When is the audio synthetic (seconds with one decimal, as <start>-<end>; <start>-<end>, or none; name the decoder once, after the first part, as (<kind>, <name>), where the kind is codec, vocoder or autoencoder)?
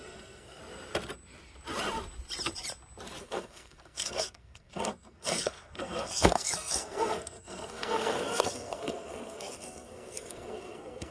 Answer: 0.0-0.6 (codec, SNAC); 3.2-11.1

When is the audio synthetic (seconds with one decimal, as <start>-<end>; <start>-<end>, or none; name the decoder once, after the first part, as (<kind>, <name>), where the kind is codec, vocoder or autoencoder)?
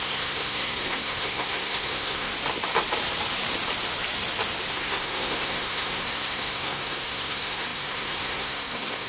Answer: 0.0-2.3 (codec, SNAC); 4.7-9.1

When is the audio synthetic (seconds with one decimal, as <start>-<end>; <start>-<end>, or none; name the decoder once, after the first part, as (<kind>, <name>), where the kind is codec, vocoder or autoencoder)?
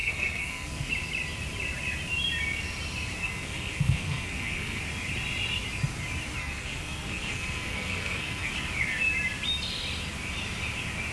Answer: 0.0-0.9 (codec, SNAC); 3.2-4.8; 6.4-8.5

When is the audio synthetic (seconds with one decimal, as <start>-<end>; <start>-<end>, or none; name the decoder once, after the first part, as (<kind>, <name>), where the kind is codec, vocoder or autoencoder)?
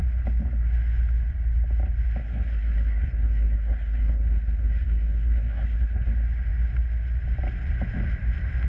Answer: 2.2-6.1 (codec, SNAC)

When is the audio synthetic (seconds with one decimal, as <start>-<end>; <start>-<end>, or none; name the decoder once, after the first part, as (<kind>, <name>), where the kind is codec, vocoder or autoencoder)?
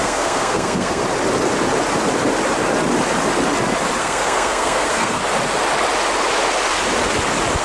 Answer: 0.0-1.0 (codec, SNAC); 4.0-5.2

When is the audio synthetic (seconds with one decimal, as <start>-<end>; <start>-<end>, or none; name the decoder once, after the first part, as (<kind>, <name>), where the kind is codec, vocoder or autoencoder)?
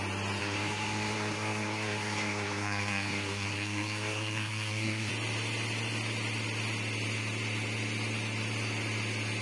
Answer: 0.4-5.1 (codec, SNAC)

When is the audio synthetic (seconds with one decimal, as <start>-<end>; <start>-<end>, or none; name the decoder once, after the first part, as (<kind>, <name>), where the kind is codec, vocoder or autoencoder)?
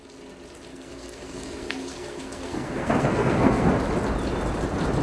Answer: 0.7-3.7 (codec, SNAC)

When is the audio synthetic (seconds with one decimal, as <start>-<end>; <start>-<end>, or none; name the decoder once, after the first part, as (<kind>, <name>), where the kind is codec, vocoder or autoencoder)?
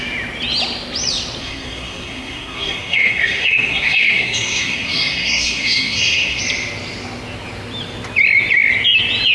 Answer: 1.4-6.4 (codec, SNAC)